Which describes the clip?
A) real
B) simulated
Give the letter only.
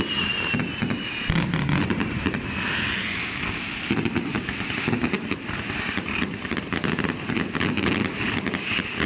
A